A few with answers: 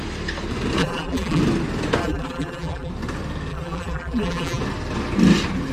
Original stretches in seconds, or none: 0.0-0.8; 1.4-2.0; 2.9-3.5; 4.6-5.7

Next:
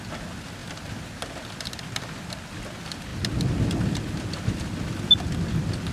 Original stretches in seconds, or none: 0.0-5.9

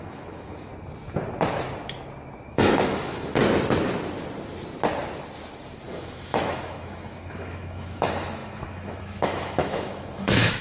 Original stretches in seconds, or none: 0.7-2.5; 3.4-5.9

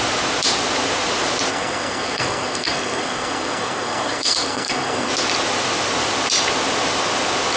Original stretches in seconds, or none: 0.0-1.5; 5.1-7.6

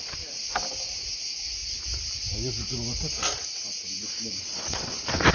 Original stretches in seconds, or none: 0.0-4.5